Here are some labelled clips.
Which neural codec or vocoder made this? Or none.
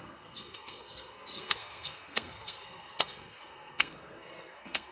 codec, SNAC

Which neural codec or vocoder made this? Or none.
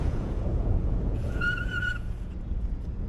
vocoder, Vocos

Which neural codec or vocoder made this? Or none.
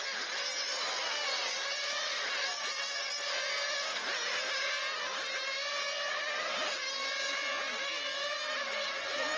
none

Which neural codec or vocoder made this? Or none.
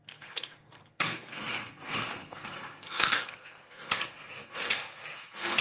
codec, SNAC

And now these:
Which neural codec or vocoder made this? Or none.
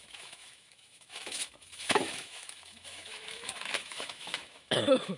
autoencoder, DAC-VAE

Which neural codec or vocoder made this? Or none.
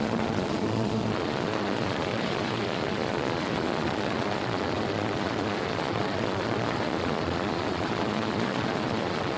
vocoder, Vocos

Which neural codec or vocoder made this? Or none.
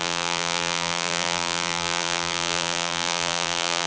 vocoder, BigVGAN v2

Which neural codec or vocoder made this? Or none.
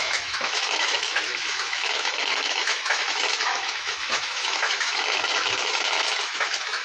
autoencoder, DAC-VAE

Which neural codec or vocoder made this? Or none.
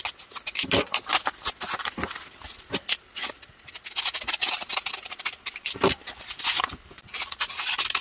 none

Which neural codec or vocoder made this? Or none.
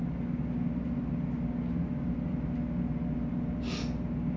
none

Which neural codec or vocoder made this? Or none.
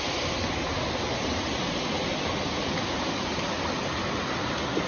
none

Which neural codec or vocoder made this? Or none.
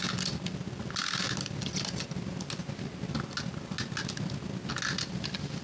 none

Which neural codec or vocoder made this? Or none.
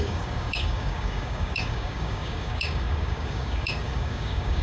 codec, DAC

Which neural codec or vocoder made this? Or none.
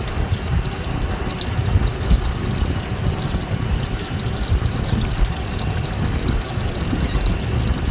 none